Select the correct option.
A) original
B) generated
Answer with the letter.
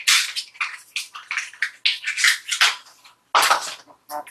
A